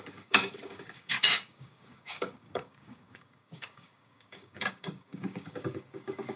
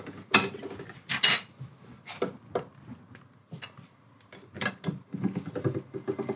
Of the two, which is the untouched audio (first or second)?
second